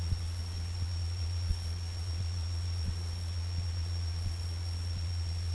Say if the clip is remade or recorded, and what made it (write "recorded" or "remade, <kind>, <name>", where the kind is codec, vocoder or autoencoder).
remade, vocoder, Vocos